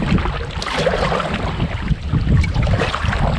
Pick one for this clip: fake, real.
real